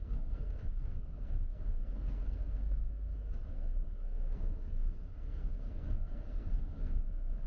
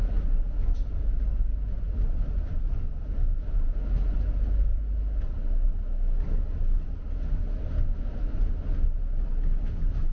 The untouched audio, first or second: second